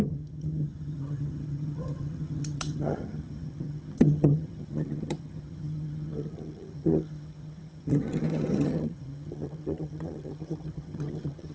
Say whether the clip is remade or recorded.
remade